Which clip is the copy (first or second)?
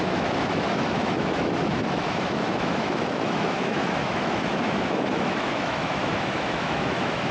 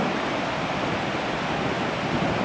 first